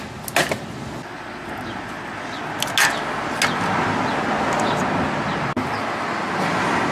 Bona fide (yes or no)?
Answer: yes